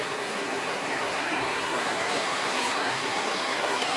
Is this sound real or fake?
fake